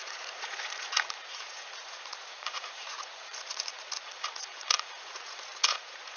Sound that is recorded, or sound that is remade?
remade